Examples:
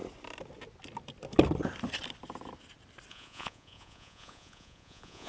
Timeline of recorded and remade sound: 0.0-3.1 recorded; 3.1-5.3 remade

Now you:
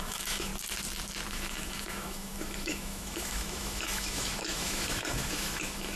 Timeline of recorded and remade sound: 0.0-0.5 remade; 0.5-1.3 recorded; 1.3-6.0 remade

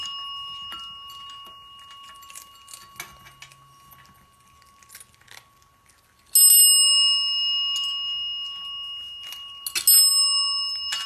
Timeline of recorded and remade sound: 0.0-11.1 recorded

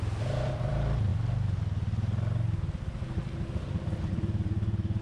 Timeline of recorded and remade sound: 0.0-1.1 remade; 1.1-4.1 recorded; 4.1-5.0 remade

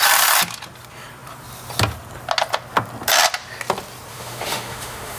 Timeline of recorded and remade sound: 0.0-4.1 recorded; 4.1-5.2 remade

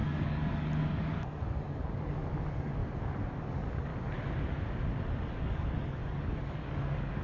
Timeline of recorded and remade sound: 0.0-2.8 remade; 2.8-3.4 recorded; 3.4-3.9 remade; 3.9-5.3 recorded; 5.3-7.2 remade

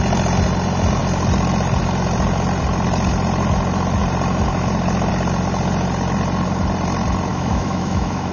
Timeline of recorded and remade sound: 0.0-7.3 recorded; 7.3-8.3 remade

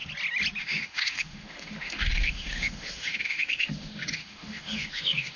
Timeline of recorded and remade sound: 0.0-0.6 recorded; 0.6-5.4 remade